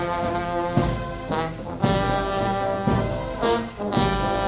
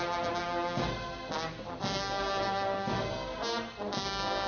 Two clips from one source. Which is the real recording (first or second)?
second